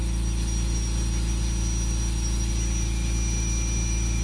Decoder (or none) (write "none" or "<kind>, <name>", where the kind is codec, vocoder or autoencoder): none